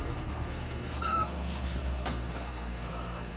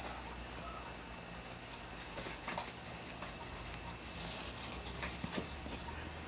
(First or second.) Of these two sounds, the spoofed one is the first